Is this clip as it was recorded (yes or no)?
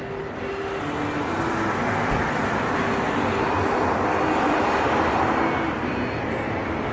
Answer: yes